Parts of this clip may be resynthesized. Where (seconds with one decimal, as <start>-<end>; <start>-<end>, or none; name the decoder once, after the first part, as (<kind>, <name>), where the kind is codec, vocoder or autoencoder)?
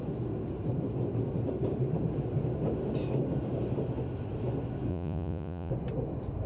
4.9-5.7 (vocoder, Vocos)